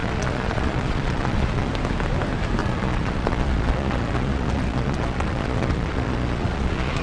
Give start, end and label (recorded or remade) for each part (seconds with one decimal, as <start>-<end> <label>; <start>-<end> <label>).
0.0-1.7 remade; 1.7-2.6 recorded; 2.6-7.0 remade

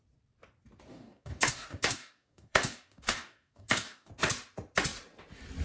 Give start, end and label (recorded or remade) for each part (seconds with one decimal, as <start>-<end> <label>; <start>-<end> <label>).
0.0-0.9 recorded; 0.9-4.1 remade; 4.1-5.6 recorded

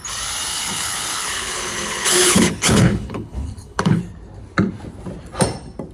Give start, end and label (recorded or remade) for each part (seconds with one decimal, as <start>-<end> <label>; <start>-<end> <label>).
0.0-0.5 recorded; 0.5-4.0 remade; 4.0-5.9 recorded